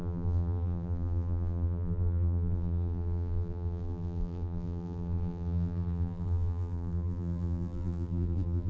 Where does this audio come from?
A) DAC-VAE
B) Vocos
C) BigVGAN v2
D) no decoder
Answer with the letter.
C